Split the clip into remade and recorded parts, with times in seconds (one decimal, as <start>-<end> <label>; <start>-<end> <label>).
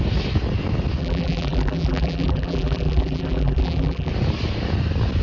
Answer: 0.0-1.0 recorded; 1.0-4.1 remade; 4.1-5.2 recorded